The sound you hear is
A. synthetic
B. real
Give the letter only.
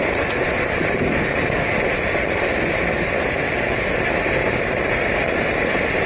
B